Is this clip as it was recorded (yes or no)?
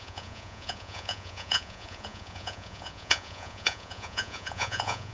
no